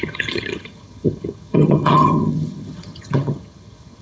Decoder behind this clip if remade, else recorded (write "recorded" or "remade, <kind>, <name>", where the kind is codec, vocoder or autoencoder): remade, vocoder, HiFi-GAN